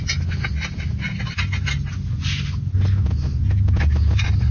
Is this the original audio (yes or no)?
yes